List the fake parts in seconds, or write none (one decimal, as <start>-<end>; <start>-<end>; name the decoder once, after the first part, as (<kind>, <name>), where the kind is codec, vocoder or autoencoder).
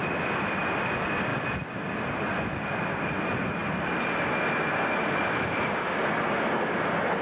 none